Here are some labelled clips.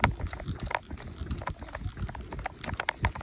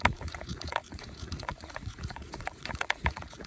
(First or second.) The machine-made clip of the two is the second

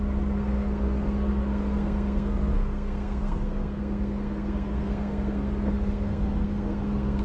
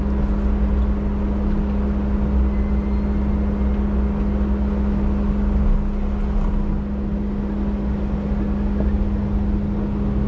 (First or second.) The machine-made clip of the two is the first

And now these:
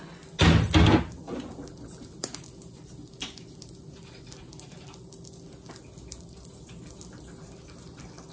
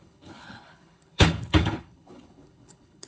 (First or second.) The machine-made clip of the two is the second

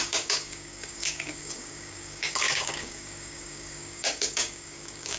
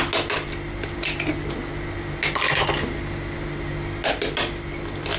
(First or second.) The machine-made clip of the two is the first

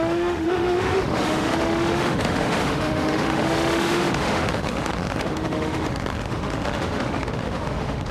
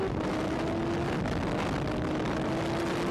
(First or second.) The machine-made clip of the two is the first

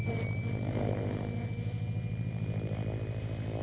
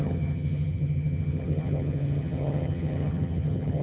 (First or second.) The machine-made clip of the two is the second